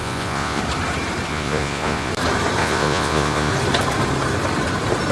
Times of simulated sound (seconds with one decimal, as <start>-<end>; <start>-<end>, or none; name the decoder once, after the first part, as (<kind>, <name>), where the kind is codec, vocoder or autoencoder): 0.0-0.6 (vocoder, Vocos); 1.3-2.1; 2.6-3.5